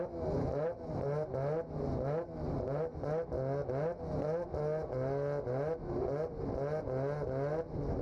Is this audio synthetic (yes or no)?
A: no